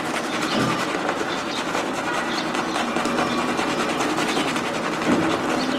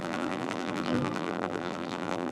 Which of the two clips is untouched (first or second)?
first